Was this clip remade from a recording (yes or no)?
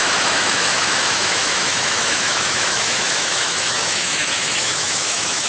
yes